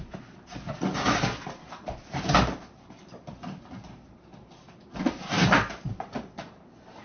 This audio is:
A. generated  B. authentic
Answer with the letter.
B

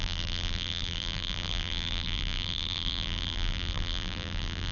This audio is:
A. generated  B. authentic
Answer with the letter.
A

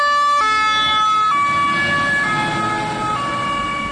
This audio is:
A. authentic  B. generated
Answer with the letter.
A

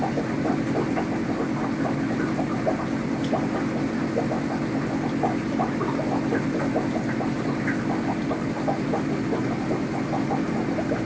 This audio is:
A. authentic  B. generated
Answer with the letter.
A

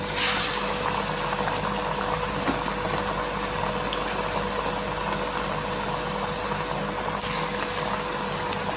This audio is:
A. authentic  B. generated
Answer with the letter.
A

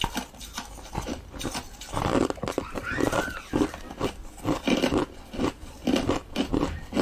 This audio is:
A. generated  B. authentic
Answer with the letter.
B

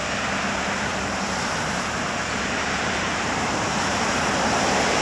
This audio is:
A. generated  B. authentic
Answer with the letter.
A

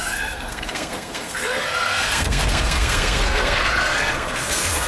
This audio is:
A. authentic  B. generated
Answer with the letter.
B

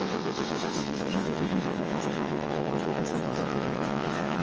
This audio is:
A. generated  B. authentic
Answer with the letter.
A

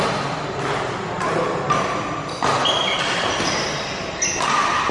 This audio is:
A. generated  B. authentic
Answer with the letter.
B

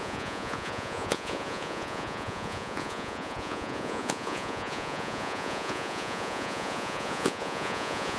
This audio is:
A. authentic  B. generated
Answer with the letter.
B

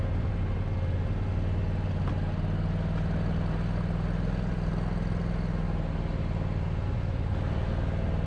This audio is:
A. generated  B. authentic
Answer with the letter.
B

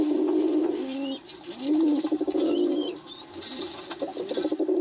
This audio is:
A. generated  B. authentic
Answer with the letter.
B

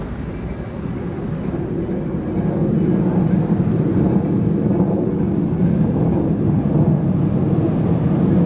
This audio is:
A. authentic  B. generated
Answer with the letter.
A